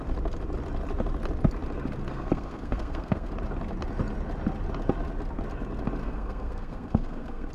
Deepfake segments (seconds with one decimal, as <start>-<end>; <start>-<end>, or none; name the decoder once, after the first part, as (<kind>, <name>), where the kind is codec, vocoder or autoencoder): 2.1-3.3 (codec, SNAC); 6.0-7.5